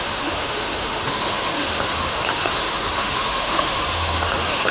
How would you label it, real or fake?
fake